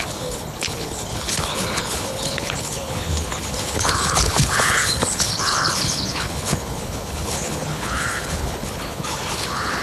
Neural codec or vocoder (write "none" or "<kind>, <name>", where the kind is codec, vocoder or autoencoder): codec, HILCodec